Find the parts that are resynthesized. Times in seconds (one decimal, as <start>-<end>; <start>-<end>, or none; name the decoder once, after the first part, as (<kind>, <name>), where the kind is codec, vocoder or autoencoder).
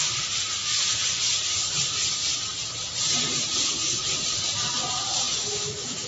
5.3-6.1 (autoencoder, DAC-VAE)